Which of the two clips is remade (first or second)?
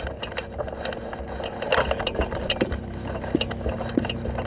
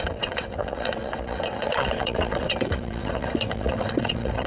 second